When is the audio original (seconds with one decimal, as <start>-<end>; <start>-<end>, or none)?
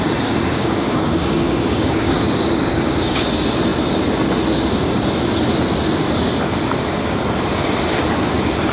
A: 0.0-0.5; 3.3-8.7